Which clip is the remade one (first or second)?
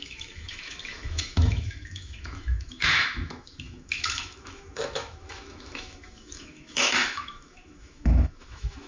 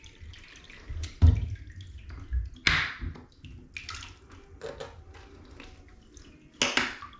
first